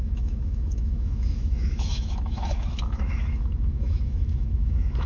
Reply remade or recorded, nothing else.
remade